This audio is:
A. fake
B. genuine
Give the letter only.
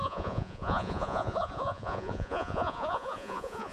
A